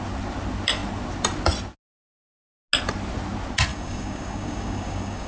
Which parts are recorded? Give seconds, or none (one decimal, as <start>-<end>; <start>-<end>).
0.0-3.7